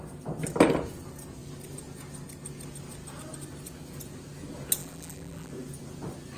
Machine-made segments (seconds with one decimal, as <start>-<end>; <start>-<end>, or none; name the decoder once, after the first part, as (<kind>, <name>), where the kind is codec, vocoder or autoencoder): 4.8-5.5 (vocoder, BigVGAN v2)